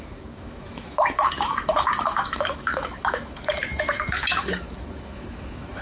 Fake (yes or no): yes